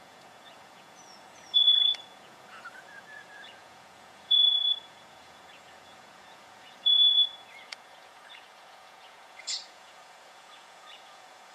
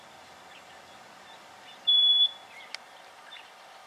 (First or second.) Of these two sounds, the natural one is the second